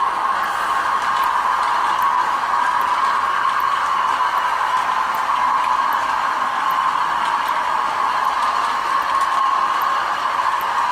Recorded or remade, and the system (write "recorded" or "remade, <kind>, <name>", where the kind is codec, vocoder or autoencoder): recorded